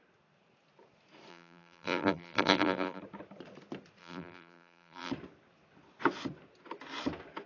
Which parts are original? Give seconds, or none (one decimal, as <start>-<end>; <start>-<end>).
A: 0.0-1.3; 3.0-4.0; 5.1-7.5